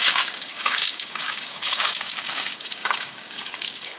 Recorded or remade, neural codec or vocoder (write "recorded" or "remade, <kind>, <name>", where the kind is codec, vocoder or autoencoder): remade, codec, DAC